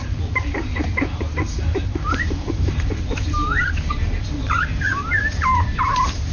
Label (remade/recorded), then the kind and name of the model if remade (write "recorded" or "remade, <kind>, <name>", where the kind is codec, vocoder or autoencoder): remade, vocoder, BigVGAN v2